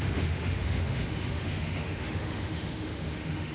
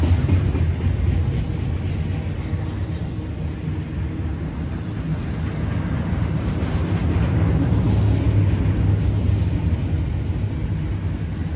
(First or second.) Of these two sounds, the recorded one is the second